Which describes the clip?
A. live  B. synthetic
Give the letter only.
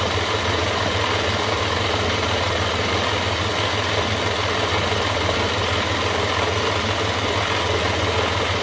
A